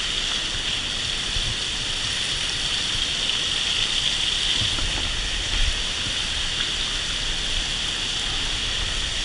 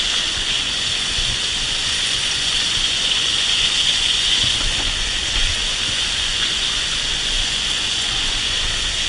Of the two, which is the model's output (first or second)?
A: second